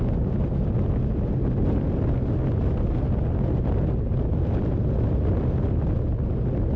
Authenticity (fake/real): real